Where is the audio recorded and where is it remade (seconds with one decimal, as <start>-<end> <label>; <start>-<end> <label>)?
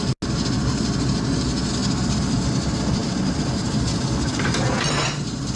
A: 0.0-5.6 recorded